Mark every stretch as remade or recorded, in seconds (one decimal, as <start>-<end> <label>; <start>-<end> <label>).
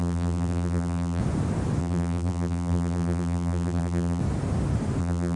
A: 0.0-1.2 remade; 1.2-1.8 recorded; 1.8-4.2 remade; 4.2-5.0 recorded; 5.0-5.4 remade